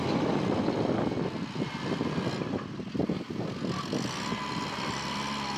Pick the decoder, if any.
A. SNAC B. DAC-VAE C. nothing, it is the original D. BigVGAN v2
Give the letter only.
C